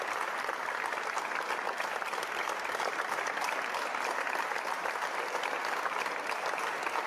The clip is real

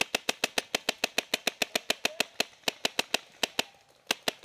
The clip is real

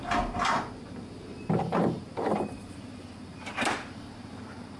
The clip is fake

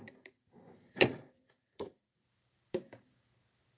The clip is fake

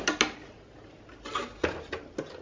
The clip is real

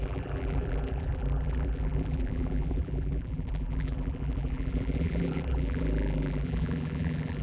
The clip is fake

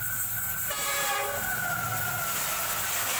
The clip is real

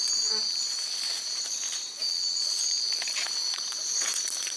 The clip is fake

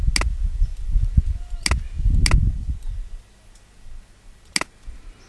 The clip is real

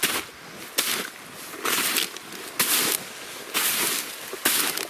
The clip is real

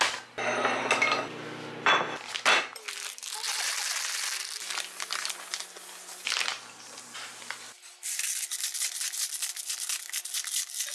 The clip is real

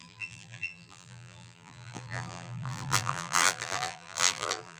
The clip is fake